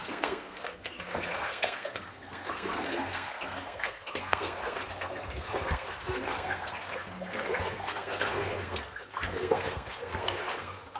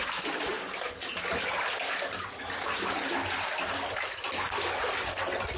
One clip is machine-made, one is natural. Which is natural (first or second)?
second